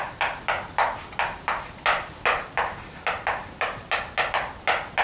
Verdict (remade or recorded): recorded